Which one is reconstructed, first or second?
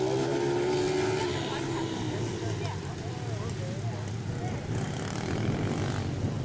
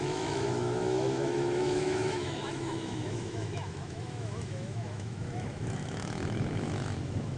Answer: second